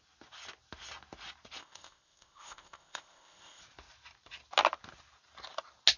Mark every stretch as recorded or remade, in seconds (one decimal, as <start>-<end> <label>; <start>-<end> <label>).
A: 0.0-1.6 recorded; 1.6-3.6 remade; 3.6-6.0 recorded